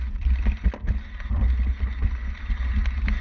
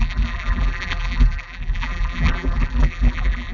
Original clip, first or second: first